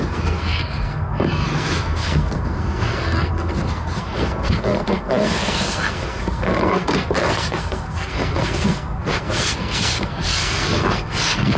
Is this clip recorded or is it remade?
remade